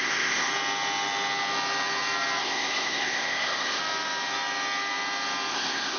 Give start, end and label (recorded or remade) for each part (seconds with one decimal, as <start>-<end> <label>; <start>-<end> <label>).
0.0-0.5 remade; 0.5-2.4 recorded; 2.4-3.8 remade; 3.8-5.5 recorded; 5.5-6.0 remade